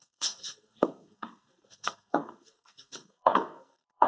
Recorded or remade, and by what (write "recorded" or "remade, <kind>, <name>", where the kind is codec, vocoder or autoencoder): remade, codec, SNAC